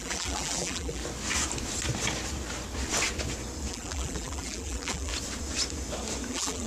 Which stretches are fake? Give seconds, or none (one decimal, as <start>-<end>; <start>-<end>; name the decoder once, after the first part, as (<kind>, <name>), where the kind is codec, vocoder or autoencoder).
0.0-1.0 (vocoder, BigVGAN v2); 3.7-5.1; 6.3-6.7